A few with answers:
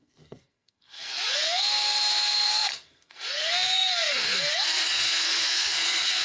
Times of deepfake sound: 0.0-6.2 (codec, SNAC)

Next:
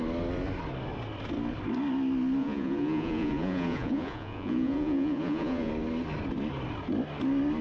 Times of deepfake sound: 2.4-5.7 (vocoder, Vocos)

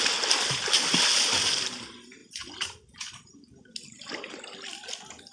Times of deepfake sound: none

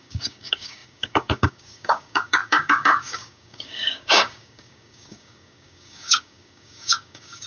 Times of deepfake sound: 0.0-7.5 (codec, DAC)

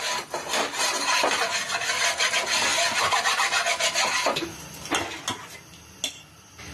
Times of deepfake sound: none

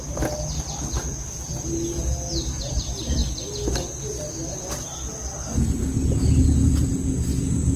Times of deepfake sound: none

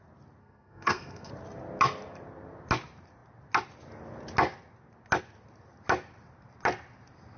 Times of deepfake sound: 0.4-1.3 (codec, SNAC)